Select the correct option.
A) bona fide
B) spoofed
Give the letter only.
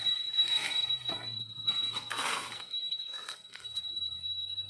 B